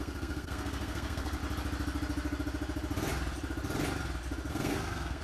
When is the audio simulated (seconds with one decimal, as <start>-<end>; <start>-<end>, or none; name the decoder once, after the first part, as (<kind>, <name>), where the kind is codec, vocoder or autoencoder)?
0.0-1.4 (codec, SNAC); 4.5-5.2